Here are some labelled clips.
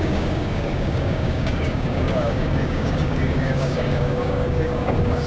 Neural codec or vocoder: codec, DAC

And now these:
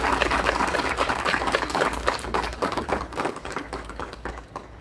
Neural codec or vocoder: codec, DAC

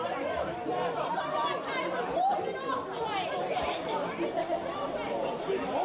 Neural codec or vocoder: none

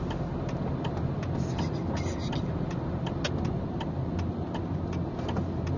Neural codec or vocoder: none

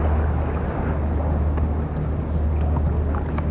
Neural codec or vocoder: none